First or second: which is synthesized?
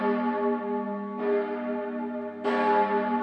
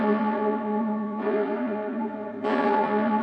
second